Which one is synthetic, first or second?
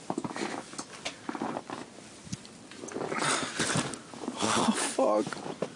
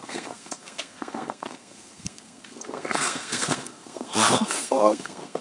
second